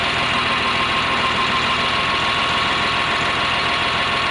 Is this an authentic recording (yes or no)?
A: yes